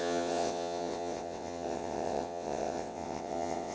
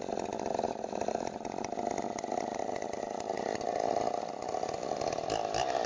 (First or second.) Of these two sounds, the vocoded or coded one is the first